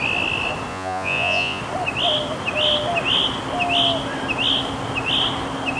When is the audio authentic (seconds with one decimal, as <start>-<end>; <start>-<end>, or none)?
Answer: 0.0-0.7; 1.6-5.8